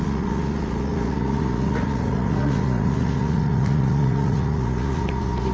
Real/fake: fake